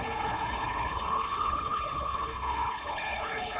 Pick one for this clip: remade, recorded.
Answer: remade